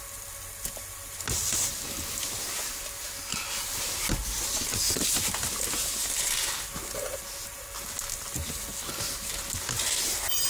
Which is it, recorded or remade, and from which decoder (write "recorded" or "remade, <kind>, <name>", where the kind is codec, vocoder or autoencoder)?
recorded